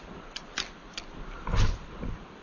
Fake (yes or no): no